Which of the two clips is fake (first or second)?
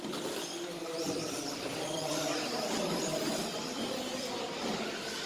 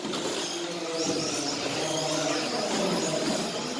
first